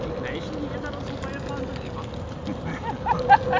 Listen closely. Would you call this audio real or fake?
real